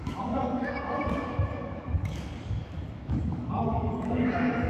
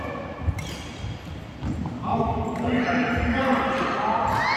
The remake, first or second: first